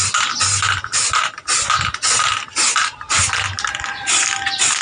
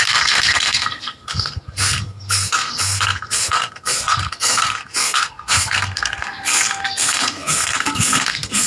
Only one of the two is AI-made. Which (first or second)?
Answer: second